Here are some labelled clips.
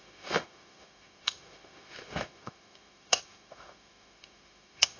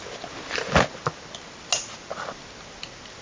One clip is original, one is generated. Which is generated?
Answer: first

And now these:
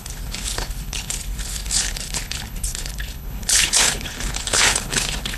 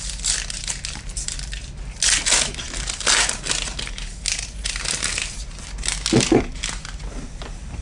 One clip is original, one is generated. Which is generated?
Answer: first